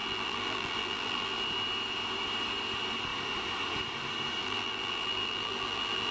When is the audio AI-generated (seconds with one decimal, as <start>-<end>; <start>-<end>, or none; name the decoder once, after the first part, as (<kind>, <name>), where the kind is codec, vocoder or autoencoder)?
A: 0.0-1.4 (vocoder, BigVGAN v2); 4.4-6.1